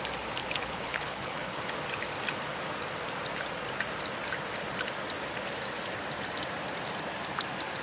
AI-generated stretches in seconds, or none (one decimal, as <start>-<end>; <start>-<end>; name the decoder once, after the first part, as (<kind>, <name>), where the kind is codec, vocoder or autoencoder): 0.4-1.6 (codec, HILCodec)